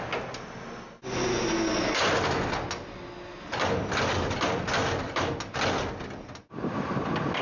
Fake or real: real